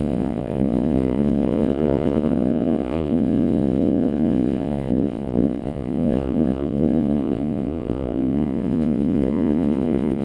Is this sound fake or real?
fake